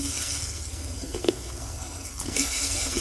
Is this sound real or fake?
fake